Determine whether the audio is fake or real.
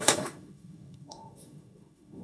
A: fake